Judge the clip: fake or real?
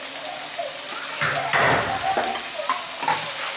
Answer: real